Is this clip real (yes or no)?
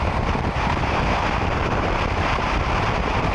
no